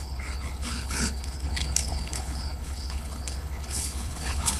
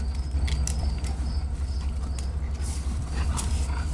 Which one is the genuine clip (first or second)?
second